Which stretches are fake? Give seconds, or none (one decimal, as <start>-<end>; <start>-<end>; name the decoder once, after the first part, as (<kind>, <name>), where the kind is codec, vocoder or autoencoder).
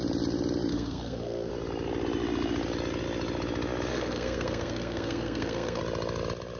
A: 0.7-1.5 (codec, SNAC); 3.9-5.8